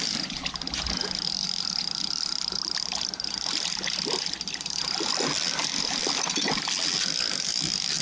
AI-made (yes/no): no